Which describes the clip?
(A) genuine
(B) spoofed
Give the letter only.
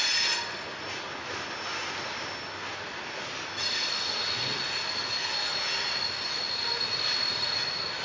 A